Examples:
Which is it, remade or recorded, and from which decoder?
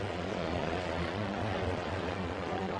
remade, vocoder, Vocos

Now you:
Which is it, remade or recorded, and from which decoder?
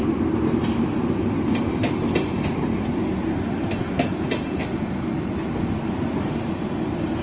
recorded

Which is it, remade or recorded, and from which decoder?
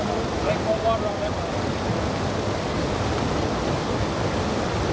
recorded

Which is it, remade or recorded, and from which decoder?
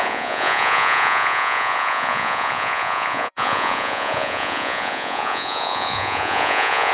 remade, vocoder, Vocos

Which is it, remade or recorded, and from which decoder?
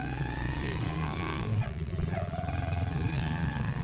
remade, vocoder, Vocos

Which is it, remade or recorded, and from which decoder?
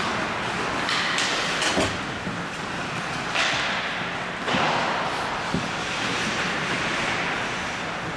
recorded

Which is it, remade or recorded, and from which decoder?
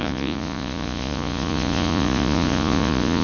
remade, vocoder, Vocos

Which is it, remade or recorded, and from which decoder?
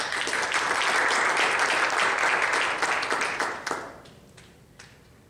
recorded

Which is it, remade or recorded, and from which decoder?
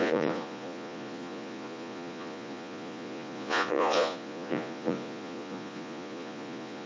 remade, vocoder, Vocos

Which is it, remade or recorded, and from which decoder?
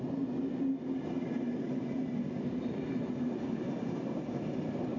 recorded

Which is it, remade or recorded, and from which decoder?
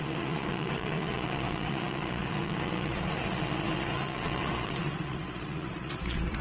remade, vocoder, Vocos